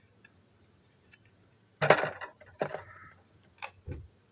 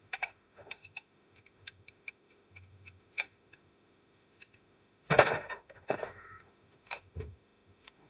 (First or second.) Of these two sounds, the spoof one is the second